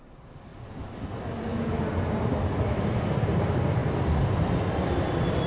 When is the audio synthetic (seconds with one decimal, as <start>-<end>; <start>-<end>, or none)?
none